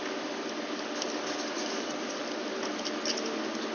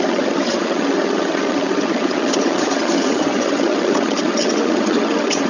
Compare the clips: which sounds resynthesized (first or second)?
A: second